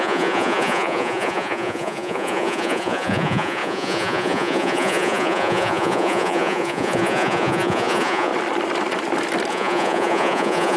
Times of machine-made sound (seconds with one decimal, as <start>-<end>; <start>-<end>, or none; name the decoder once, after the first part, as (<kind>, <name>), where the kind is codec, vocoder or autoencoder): 0.0-8.3 (vocoder, Vocos); 9.5-10.8